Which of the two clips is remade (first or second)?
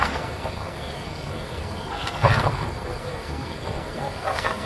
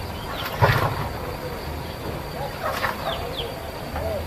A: first